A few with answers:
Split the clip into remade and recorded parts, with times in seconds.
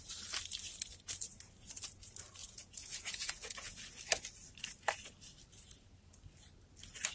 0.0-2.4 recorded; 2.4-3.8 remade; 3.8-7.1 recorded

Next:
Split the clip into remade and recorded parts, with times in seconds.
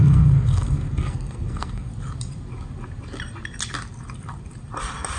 0.0-1.9 remade; 1.9-5.2 recorded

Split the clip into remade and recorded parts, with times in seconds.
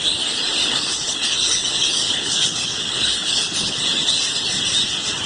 0.0-0.6 recorded; 0.6-3.8 remade; 3.8-5.3 recorded